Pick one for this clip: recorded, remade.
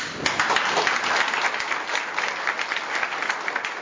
recorded